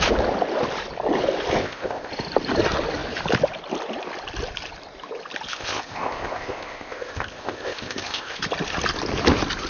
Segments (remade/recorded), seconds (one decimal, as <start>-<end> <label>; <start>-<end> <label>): 0.0-1.6 recorded; 1.6-2.1 remade; 2.1-5.5 recorded; 5.5-8.4 remade; 8.4-9.7 recorded